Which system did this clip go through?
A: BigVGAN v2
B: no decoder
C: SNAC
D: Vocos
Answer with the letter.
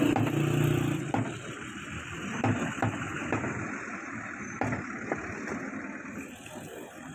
B